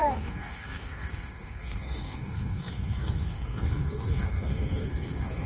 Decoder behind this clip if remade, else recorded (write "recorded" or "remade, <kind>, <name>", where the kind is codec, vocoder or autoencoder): remade, codec, SNAC